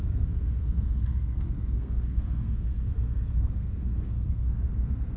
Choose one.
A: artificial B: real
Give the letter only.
A